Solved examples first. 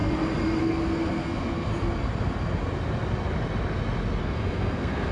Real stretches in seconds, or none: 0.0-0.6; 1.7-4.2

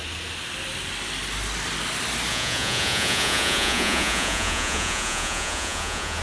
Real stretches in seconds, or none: 0.0-2.3

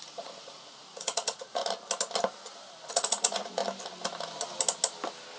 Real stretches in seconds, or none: 1.6-2.9; 3.6-5.4